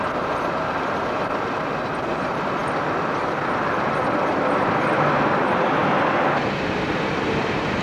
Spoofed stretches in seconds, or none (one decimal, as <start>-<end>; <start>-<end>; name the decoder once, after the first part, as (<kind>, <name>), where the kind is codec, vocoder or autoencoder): none